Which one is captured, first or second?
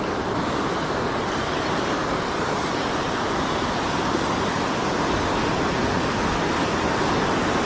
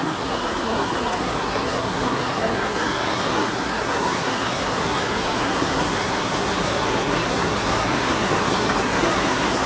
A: first